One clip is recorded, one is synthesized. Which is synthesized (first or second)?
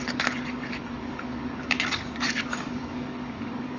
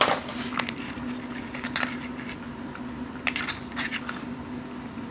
first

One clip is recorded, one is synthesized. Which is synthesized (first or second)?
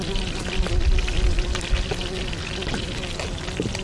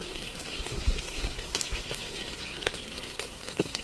second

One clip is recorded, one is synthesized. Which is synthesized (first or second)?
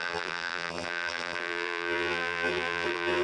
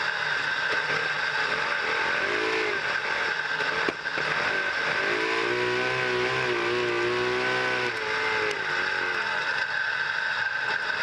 first